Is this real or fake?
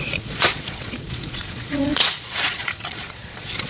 fake